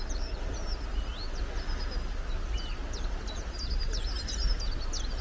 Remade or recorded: recorded